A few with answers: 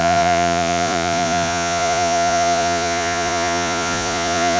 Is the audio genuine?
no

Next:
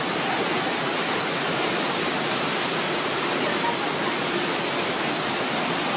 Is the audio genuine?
yes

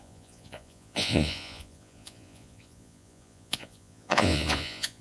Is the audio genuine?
no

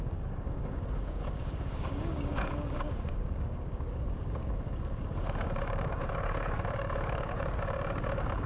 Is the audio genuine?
no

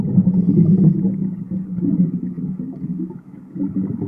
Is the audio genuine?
no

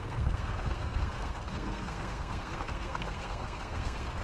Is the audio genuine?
no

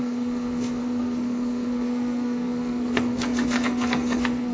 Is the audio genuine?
no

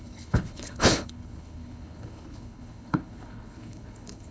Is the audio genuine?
no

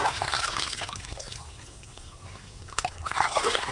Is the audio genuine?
no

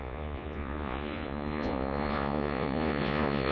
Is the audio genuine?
no